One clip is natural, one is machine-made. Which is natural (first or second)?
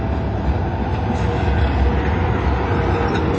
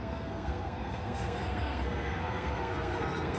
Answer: first